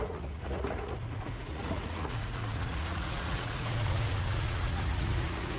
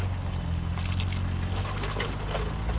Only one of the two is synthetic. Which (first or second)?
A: first